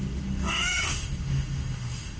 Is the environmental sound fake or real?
fake